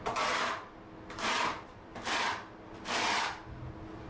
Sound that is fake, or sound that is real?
real